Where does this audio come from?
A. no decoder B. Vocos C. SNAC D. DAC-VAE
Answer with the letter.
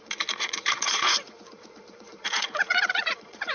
B